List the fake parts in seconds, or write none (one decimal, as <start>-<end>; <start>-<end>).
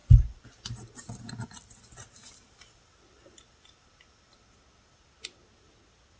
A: none